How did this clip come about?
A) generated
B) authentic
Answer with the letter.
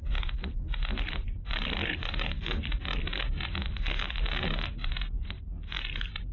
B